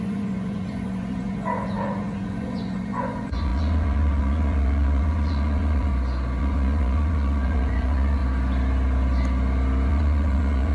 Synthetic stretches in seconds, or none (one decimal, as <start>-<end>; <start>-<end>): 0.0-5.9; 6.4-8.2; 9.9-10.7